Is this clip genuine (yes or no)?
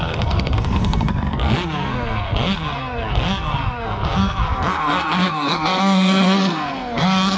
no